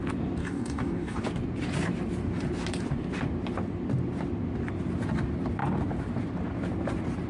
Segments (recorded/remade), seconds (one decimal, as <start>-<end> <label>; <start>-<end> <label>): 0.0-0.4 recorded; 0.4-1.2 remade; 1.2-7.3 recorded